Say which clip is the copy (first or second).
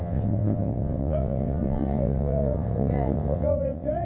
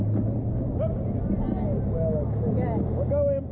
first